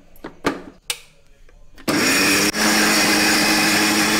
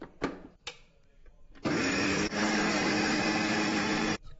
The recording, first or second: first